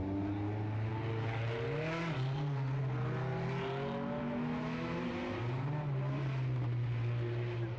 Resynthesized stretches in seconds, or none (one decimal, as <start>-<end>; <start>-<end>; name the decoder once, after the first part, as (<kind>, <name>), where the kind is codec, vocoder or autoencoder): 4.2-5.1 (autoencoder, DAC-VAE)